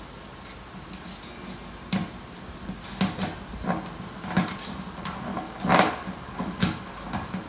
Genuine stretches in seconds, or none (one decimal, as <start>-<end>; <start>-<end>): 0.0-5.3; 6.9-7.5